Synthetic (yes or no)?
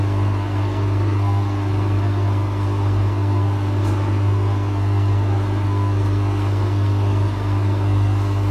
yes